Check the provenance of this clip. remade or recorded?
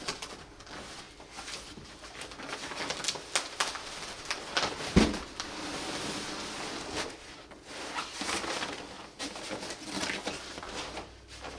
recorded